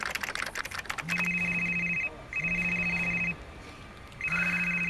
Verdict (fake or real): real